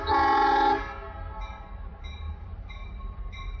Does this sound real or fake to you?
real